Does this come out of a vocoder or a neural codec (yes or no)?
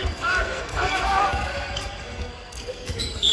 yes